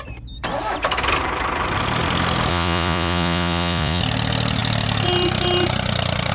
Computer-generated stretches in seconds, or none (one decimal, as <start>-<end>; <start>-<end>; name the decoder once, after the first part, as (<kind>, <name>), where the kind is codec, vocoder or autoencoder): 2.5-4.0 (vocoder, Vocos)